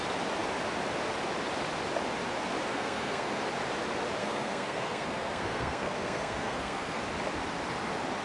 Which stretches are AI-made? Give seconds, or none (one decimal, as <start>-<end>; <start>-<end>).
2.7-3.4; 4.2-7.0